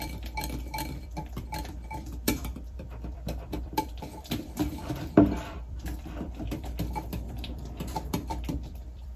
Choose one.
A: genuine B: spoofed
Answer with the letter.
B